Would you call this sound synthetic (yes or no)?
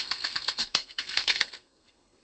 yes